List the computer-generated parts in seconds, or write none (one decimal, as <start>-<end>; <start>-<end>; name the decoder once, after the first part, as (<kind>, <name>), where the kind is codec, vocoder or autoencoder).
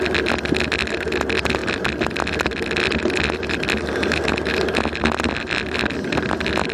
none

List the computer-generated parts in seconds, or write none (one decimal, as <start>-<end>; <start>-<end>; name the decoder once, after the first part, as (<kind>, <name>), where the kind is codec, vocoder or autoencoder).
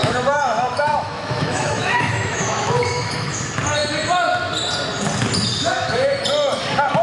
0.0-3.4 (autoencoder, DAC-VAE); 5.6-6.2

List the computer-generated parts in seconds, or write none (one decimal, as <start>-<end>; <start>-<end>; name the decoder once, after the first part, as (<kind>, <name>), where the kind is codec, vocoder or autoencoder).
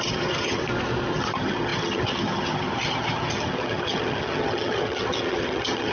0.0-0.6 (vocoder, HiFi-GAN); 1.1-5.9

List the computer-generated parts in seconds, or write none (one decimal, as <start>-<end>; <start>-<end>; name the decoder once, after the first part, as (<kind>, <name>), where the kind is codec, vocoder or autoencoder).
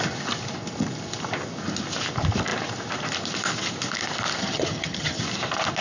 4.4-5.2 (vocoder, HiFi-GAN)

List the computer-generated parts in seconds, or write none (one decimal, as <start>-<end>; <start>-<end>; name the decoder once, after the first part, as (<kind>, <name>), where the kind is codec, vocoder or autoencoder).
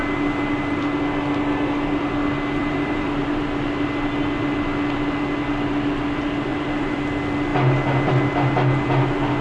2.6-3.4 (vocoder, BigVGAN v2); 6.5-7.0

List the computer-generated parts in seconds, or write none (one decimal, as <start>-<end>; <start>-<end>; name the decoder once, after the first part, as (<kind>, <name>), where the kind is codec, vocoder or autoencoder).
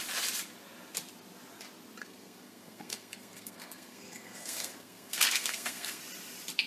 2.0-6.0 (codec, SNAC)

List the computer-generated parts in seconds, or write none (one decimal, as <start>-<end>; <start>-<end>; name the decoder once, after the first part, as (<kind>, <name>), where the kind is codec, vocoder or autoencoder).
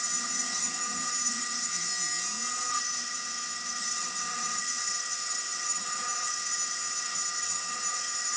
0.0-1.9 (vocoder, HiFi-GAN); 2.8-8.4